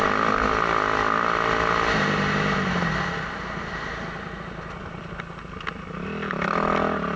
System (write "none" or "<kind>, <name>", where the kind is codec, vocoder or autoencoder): none